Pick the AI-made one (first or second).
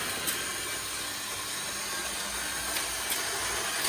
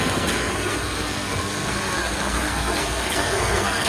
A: second